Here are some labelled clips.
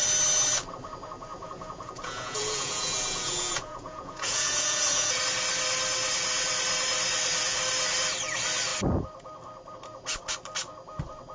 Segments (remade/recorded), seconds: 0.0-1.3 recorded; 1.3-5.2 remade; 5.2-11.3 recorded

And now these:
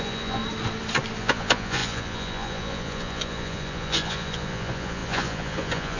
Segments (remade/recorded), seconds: 0.0-0.4 remade; 0.4-1.2 recorded; 1.2-6.0 remade

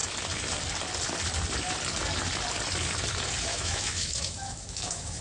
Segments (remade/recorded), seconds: 0.0-3.5 recorded; 3.5-5.2 remade